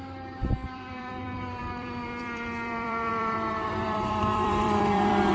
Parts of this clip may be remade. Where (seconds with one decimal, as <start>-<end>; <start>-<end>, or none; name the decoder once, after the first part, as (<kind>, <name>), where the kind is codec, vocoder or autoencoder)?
0.0-5.3 (vocoder, BigVGAN v2)